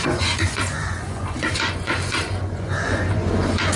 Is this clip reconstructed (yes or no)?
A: yes